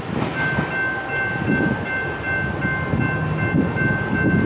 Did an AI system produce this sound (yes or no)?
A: no